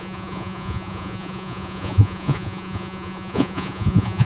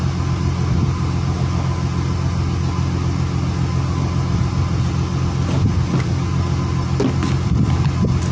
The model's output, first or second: first